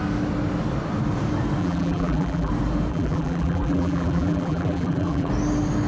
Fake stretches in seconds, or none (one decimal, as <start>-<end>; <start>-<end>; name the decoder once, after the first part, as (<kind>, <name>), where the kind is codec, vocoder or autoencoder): 1.6-2.5 (vocoder, BigVGAN v2); 2.9-5.3